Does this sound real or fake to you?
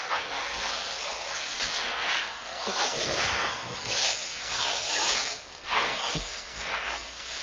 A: fake